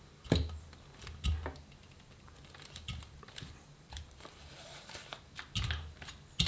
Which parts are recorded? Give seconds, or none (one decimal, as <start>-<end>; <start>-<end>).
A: 0.0-1.8; 4.8-6.5